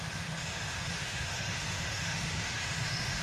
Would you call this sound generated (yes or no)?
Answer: yes